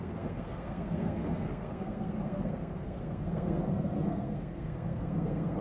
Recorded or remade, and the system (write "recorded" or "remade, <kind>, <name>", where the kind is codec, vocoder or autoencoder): remade, codec, SNAC